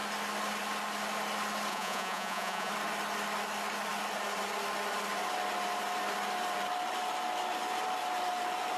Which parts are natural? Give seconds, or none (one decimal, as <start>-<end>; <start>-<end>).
0.0-1.7; 2.7-8.8